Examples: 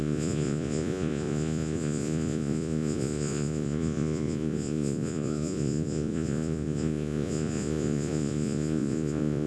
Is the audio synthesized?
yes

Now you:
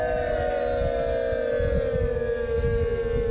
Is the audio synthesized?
no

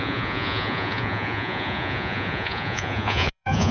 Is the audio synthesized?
yes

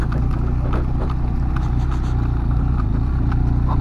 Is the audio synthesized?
no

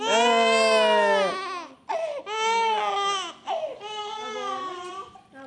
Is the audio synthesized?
no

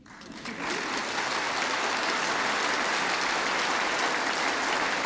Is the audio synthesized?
no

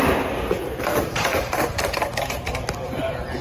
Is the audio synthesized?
no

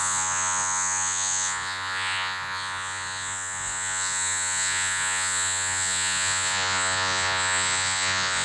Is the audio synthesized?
yes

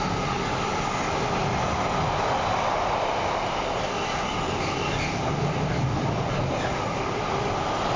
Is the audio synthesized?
no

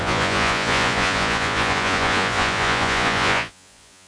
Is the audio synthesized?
yes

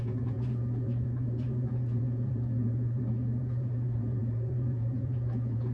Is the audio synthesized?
yes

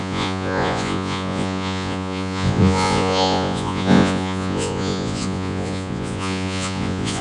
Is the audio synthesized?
yes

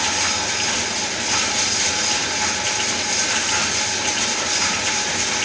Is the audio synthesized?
no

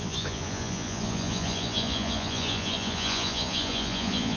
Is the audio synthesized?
yes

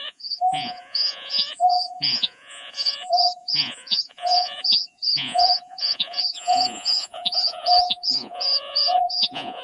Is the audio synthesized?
yes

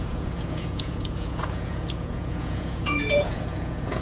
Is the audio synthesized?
yes